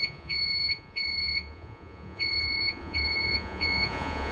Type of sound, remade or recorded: remade